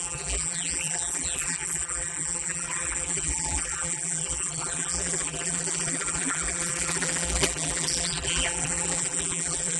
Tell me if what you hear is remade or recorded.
remade